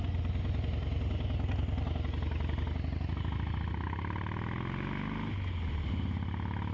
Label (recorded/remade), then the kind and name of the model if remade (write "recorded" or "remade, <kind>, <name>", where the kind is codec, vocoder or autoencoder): recorded